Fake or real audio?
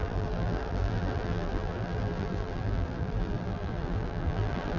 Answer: fake